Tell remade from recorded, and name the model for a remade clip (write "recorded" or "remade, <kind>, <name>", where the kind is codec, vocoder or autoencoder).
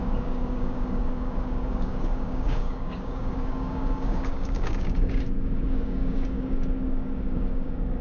remade, codec, DAC